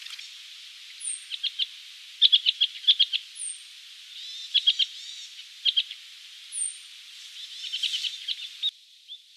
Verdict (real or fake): real